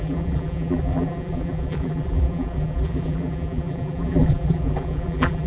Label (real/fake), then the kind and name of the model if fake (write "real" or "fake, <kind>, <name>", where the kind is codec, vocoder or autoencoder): fake, vocoder, BigVGAN v2